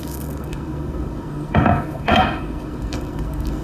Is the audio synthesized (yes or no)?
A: yes